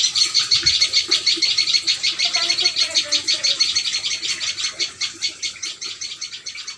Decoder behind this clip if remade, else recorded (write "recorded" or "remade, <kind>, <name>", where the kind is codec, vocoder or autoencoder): recorded